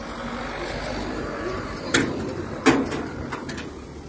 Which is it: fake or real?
real